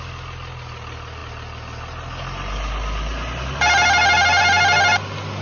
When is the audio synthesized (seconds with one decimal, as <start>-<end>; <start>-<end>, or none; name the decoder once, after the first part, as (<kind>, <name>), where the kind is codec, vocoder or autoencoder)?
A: none